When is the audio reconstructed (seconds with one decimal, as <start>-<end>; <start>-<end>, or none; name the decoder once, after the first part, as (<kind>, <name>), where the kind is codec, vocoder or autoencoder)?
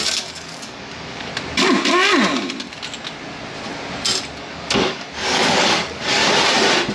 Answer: 0.0-1.3 (codec, DAC); 4.4-6.2